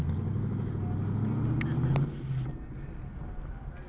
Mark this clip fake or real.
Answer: real